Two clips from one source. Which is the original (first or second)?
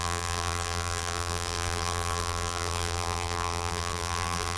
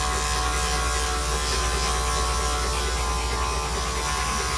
second